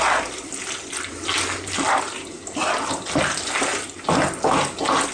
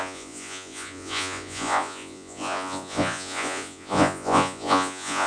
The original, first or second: first